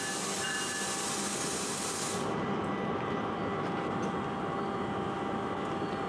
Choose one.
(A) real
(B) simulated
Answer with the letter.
A